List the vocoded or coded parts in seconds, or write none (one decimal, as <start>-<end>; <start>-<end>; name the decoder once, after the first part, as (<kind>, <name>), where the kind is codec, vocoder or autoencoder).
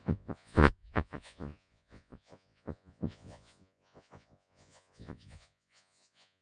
0.0-6.4 (vocoder, Vocos)